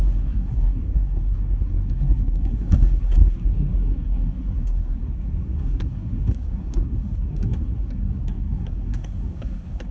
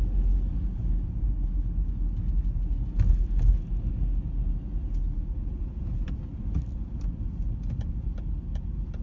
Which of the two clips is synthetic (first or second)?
first